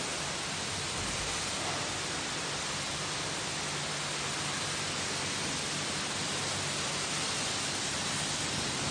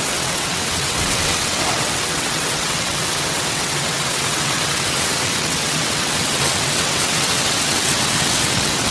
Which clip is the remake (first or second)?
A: second